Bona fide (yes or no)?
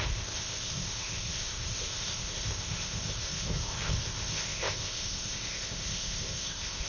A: no